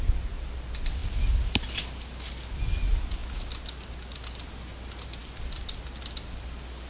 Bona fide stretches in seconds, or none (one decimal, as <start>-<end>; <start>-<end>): 0.0-6.9